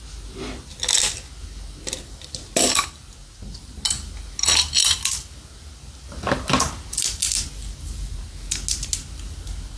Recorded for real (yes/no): yes